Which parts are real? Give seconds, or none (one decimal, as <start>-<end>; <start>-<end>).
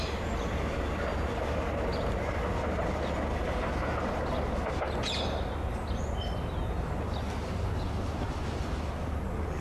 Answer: 0.0-9.6